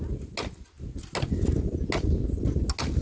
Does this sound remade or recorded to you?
recorded